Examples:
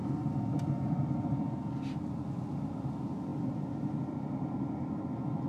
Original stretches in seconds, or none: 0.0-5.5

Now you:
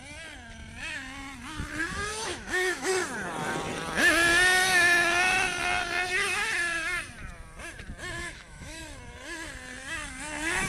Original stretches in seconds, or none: 0.0-2.1; 2.9-8.2; 8.8-10.7

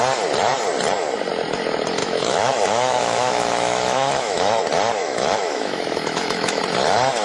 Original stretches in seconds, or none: 0.0-2.0; 4.6-5.0; 6.6-7.2

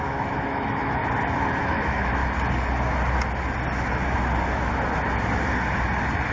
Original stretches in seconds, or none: 1.0-1.6; 2.2-6.3